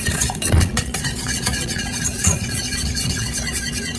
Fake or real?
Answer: fake